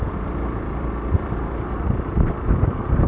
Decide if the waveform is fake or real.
fake